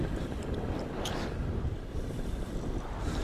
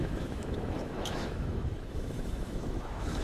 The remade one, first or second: second